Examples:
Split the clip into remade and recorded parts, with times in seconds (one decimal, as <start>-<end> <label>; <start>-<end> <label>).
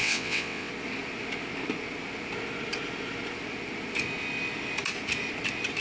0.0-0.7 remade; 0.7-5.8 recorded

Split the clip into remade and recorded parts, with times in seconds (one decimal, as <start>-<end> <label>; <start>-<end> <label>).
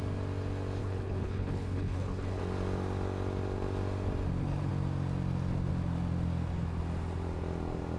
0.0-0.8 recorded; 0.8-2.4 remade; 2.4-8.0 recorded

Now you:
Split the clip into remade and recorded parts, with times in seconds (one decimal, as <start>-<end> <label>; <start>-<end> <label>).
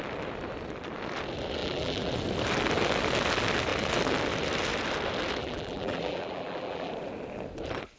0.0-1.6 recorded; 1.6-2.1 remade; 2.1-5.4 recorded; 5.4-6.9 remade; 6.9-8.0 recorded